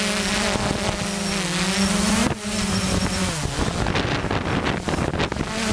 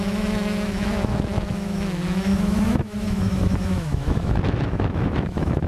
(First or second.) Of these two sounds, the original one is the first